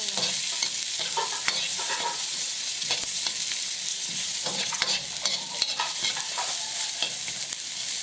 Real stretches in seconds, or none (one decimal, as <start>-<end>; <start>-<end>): 0.0-1.7; 3.2-3.9; 4.8-8.0